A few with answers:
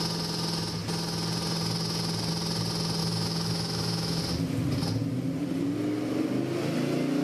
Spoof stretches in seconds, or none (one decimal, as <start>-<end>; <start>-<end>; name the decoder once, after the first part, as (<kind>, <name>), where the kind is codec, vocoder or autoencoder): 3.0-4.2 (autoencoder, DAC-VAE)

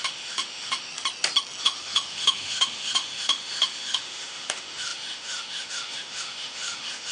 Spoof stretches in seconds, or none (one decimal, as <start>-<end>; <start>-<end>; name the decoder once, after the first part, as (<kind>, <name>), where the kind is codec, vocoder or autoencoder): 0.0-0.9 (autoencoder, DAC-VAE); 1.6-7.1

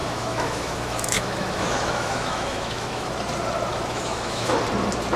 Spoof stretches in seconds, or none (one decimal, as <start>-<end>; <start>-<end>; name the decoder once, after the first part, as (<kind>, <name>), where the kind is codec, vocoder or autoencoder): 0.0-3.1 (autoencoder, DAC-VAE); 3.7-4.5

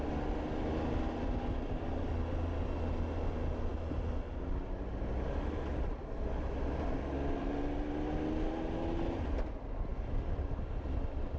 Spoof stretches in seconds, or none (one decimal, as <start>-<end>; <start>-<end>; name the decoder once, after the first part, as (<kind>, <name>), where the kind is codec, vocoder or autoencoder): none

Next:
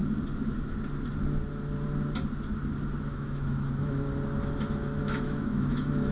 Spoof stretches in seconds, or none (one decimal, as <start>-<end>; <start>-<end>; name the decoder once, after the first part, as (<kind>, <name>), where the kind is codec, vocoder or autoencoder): 3.0-4.1 (autoencoder, DAC-VAE); 5.0-6.1

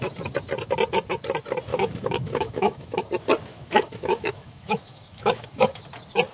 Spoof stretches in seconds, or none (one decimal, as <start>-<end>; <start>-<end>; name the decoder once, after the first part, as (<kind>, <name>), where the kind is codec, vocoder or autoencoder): 1.7-3.0 (autoencoder, DAC-VAE); 3.5-5.8

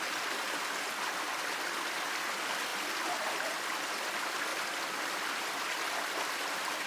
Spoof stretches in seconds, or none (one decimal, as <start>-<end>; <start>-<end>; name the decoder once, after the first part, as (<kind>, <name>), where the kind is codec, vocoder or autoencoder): none

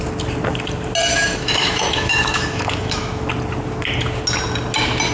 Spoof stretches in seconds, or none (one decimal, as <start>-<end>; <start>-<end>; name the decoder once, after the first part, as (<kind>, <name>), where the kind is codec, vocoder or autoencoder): 1.1-3.3 (autoencoder, DAC-VAE)